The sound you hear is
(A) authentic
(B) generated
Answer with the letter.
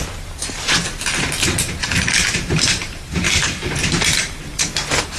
B